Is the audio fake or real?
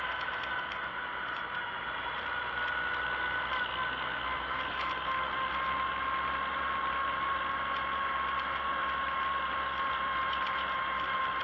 real